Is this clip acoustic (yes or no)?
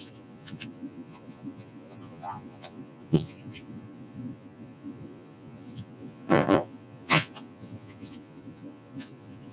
no